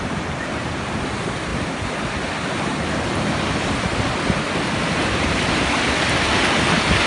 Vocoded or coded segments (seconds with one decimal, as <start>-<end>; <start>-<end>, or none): none

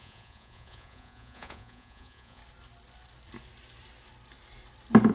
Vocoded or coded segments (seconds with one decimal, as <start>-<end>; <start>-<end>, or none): 0.0-2.4